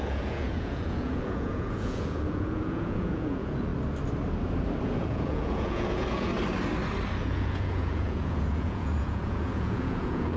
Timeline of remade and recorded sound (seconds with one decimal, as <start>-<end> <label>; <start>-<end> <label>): 0.0-3.7 remade; 3.7-4.8 recorded; 4.8-6.3 remade; 6.3-7.2 recorded; 7.2-10.4 remade